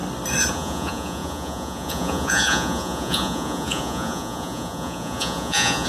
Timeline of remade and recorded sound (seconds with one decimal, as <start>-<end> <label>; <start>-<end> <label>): 0.0-0.5 recorded; 0.5-5.9 remade